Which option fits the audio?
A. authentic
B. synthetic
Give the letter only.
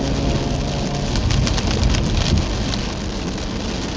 A